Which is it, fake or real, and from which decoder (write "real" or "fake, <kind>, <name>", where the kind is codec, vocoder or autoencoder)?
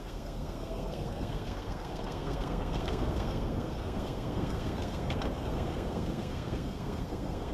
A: fake, codec, SNAC